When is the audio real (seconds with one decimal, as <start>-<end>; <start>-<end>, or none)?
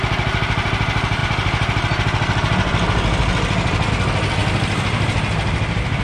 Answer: 0.0-6.0